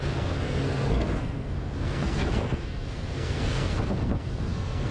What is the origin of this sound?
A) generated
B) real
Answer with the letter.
A